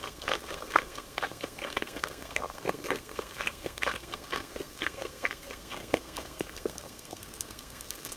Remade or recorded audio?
remade